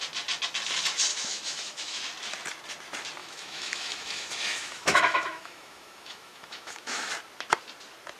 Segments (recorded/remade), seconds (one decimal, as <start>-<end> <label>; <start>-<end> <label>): 0.0-1.1 recorded; 1.1-2.0 remade; 2.0-3.2 recorded; 3.2-7.1 remade; 7.1-8.2 recorded